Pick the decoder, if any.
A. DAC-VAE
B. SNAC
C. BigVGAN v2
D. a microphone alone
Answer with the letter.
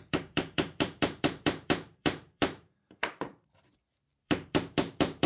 C